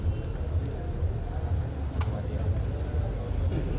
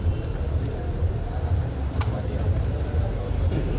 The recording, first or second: first